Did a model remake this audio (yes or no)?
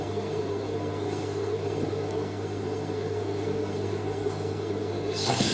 yes